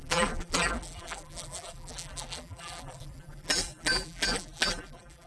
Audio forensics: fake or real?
fake